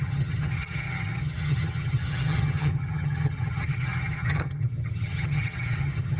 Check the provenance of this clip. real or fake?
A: fake